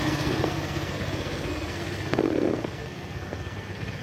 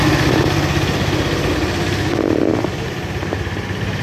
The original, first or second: second